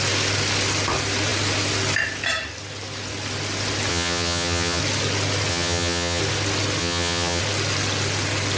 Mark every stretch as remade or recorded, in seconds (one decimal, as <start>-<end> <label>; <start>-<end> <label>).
0.0-3.9 recorded; 3.9-4.8 remade; 4.8-5.5 recorded; 5.5-6.2 remade; 6.2-6.8 recorded; 6.8-7.4 remade; 7.4-8.6 recorded